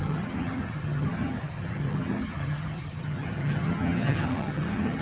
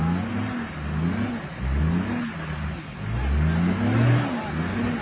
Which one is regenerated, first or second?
first